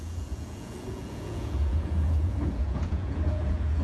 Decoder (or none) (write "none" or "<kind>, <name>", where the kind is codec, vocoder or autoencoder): vocoder, Vocos